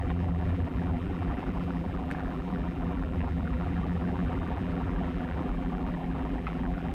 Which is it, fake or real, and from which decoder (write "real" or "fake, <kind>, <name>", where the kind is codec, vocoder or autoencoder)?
fake, vocoder, BigVGAN v2